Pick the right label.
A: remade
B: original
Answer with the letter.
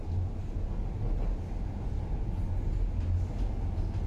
B